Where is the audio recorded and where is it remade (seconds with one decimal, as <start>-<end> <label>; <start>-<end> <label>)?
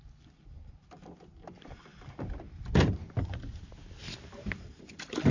0.0-5.3 recorded